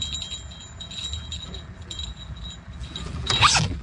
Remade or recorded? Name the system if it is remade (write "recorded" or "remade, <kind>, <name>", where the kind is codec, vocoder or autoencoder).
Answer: remade, vocoder, BigVGAN v2